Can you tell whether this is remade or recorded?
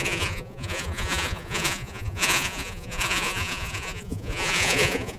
remade